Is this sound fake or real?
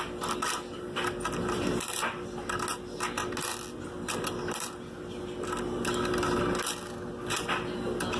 real